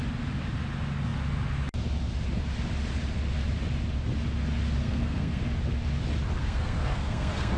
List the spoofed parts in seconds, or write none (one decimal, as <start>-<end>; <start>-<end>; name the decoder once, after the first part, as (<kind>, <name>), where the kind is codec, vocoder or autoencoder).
4.8-5.4 (codec, SNAC); 6.4-7.6